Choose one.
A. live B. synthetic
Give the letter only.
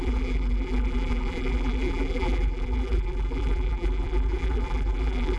B